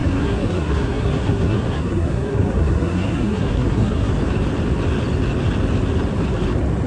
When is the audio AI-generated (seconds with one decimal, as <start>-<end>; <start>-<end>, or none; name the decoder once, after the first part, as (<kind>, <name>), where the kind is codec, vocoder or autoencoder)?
0.0-4.1 (codec, SNAC)

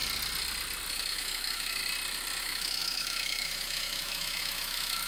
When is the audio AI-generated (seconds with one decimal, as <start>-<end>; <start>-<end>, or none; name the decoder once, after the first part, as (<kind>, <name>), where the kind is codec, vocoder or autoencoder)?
0.9-1.8 (autoencoder, DAC-VAE); 2.4-5.1

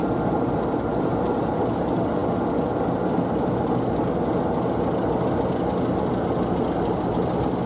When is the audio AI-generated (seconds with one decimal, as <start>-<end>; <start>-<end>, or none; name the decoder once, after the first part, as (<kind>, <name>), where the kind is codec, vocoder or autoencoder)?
none

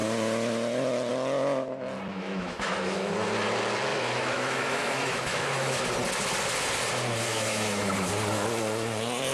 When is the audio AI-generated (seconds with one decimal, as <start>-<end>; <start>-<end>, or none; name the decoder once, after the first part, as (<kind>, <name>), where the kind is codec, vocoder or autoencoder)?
2.1-3.1 (autoencoder, DAC-VAE); 3.9-5.8; 7.3-8.1

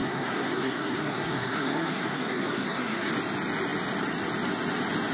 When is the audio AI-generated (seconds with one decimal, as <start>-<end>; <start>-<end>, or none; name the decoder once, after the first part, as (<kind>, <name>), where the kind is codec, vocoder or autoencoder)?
0.0-3.1 (codec, SNAC)